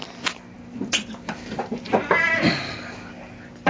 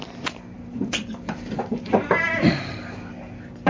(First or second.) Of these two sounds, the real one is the first